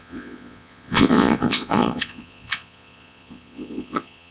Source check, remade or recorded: remade